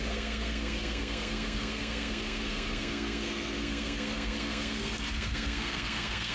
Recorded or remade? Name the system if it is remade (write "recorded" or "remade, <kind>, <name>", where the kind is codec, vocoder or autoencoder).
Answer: remade, codec, SNAC